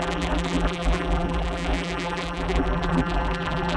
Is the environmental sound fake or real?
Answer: fake